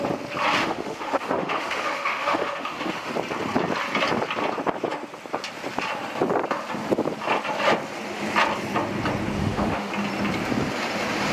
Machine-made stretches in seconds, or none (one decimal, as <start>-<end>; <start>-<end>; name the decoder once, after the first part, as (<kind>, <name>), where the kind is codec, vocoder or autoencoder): 0.6-3.1 (autoencoder, DAC-VAE); 9.4-9.9